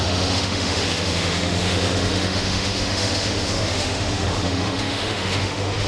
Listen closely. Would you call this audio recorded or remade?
remade